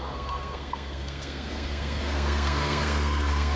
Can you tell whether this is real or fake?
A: fake